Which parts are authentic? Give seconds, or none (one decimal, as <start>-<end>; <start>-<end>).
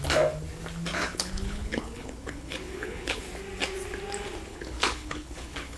0.0-0.9; 3.2-4.5